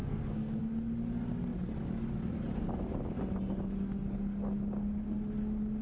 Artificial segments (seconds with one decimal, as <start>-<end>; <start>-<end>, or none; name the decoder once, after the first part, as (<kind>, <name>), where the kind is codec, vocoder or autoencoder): 0.0-0.6 (codec, SNAC)